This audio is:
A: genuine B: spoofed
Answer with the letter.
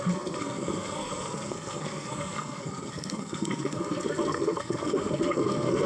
B